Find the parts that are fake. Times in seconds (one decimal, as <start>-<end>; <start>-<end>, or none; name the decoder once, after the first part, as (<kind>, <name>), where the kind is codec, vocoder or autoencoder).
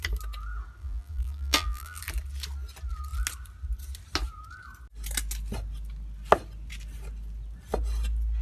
0.8-2.0 (vocoder, BigVGAN v2)